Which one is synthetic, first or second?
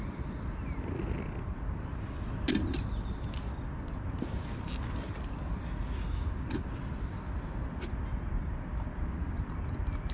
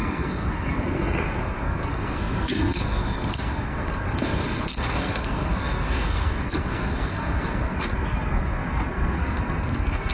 second